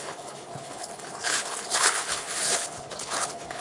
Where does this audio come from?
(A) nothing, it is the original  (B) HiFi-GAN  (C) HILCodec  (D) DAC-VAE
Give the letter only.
C